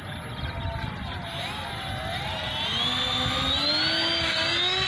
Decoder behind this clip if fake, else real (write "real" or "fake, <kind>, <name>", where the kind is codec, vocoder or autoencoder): real